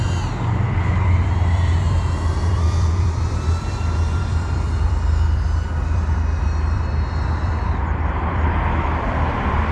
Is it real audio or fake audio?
fake